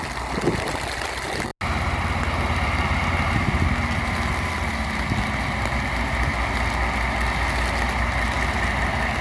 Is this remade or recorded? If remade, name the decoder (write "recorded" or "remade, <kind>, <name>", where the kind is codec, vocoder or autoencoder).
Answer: recorded